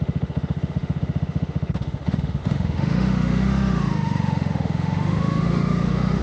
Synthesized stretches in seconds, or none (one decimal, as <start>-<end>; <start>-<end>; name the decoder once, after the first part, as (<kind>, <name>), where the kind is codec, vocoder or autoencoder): 0.0-6.2 (autoencoder, DAC-VAE)